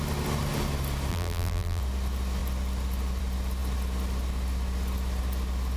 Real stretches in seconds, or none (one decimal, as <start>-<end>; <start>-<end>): 0.0-1.1; 1.8-5.8